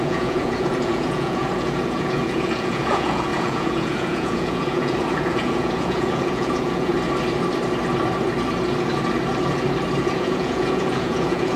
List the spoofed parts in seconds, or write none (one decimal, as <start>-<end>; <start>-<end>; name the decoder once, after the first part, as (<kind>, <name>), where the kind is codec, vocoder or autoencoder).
0.0-6.9 (vocoder, Vocos); 10.0-11.6